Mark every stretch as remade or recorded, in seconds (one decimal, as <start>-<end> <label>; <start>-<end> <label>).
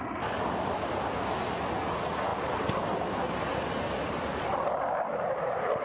0.0-5.8 recorded